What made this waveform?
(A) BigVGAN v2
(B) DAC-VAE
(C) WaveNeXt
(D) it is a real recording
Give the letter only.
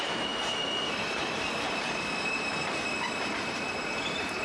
A